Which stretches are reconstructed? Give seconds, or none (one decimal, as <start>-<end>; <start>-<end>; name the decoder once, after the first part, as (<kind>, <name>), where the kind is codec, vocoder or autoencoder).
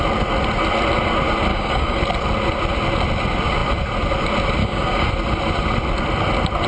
1.5-2.0 (codec, DAC); 4.6-5.1